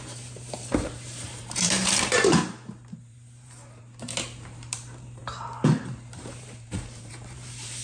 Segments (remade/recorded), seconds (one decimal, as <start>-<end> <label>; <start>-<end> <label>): 0.0-5.2 remade; 5.2-5.9 recorded; 5.9-7.8 remade